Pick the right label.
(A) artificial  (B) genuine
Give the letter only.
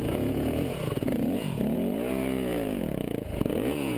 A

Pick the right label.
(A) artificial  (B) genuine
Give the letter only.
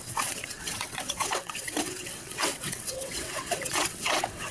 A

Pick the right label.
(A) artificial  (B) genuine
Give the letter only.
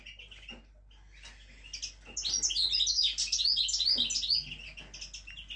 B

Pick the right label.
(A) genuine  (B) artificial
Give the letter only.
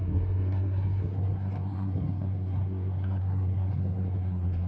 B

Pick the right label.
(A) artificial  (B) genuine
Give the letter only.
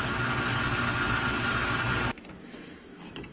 B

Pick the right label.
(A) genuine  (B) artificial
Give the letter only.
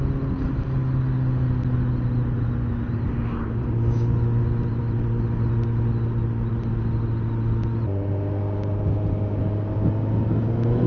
A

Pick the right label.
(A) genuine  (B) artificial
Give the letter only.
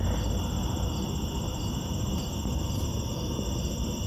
A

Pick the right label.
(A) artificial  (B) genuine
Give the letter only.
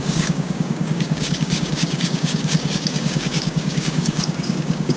A